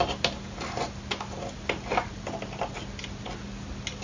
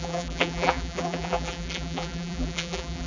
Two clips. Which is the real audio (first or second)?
first